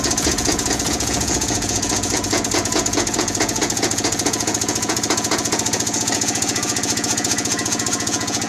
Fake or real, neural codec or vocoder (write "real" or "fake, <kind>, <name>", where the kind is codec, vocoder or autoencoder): fake, vocoder, Vocos